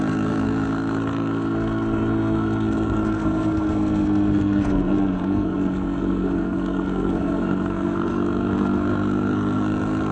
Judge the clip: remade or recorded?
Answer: remade